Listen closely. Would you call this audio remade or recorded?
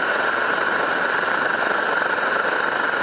recorded